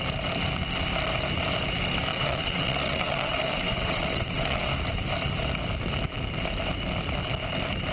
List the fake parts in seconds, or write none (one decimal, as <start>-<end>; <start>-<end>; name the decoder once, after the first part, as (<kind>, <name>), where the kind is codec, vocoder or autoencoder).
2.1-4.6 (vocoder, WaveNeXt)